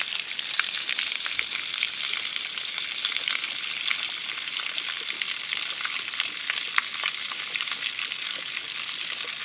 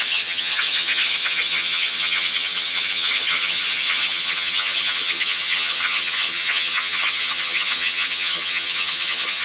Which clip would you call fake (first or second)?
second